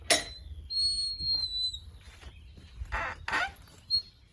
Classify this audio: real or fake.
real